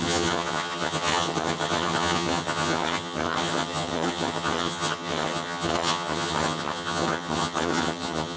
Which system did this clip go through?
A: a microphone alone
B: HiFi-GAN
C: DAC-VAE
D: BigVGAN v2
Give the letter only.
B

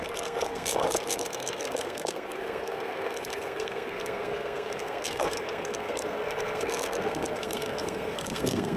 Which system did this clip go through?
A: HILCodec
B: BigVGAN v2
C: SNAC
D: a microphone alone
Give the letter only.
C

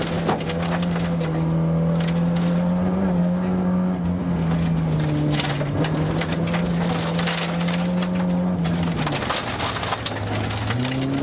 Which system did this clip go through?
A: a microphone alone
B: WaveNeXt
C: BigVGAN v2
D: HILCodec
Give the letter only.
A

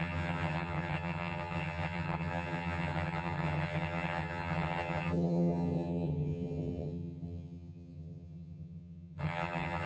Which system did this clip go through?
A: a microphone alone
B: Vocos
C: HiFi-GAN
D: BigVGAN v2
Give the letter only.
C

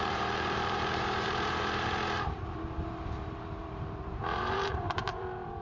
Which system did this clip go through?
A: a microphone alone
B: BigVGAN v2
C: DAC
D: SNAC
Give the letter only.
B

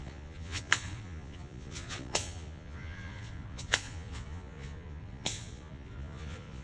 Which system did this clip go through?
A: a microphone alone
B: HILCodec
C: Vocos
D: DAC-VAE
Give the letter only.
C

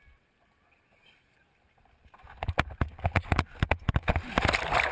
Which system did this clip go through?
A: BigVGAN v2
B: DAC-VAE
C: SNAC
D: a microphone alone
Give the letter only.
D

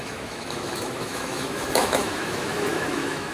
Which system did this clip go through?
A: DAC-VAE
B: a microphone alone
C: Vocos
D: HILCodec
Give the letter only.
A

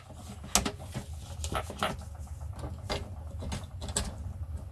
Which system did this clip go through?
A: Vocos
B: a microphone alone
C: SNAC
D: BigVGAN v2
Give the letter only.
B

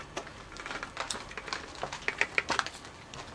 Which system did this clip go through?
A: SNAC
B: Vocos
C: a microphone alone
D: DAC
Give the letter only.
C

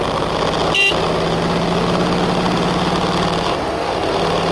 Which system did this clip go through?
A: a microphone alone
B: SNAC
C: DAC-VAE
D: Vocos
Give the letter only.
A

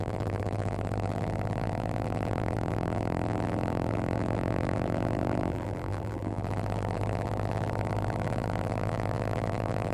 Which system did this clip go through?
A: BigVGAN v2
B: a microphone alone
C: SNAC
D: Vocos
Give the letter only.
A